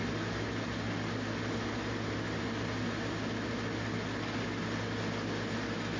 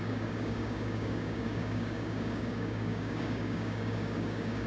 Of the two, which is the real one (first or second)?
first